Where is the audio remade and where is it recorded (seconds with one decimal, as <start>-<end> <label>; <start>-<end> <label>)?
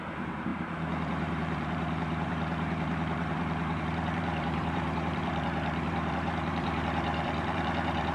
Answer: 0.0-8.1 remade